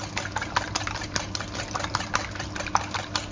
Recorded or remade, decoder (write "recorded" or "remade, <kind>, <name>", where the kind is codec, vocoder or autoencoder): recorded